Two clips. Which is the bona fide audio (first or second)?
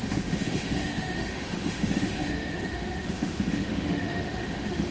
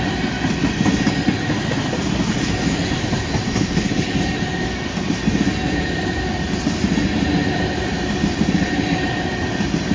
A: second